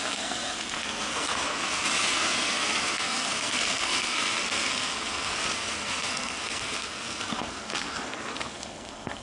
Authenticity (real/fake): fake